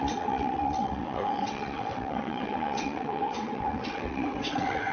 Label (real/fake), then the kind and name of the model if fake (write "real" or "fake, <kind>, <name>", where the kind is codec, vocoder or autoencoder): fake, vocoder, WaveNeXt